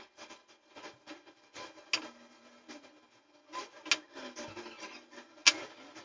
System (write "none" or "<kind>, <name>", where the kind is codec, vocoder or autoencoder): none